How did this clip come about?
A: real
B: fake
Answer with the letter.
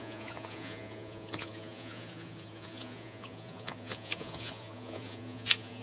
B